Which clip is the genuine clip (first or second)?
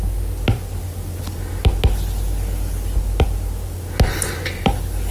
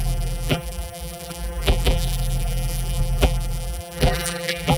first